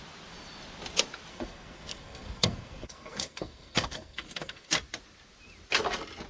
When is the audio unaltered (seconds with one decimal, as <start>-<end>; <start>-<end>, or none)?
0.0-1.3; 4.7-6.3